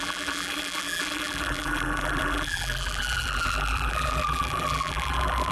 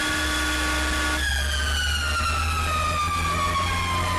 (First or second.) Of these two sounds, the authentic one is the second